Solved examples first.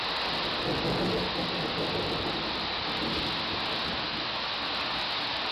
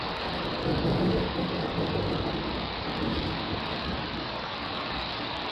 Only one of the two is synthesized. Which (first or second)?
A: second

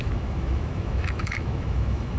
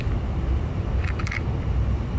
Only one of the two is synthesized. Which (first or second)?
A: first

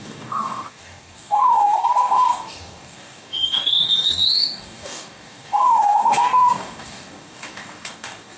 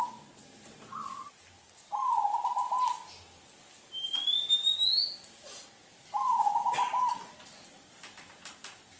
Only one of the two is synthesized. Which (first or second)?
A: first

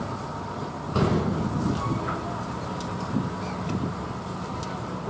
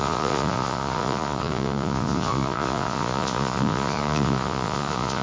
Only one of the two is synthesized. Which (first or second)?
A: second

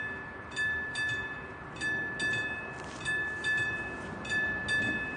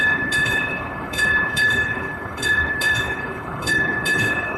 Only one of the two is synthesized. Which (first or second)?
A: second